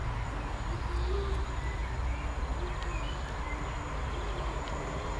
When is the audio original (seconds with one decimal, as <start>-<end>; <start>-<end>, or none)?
0.0-1.3; 1.8-5.2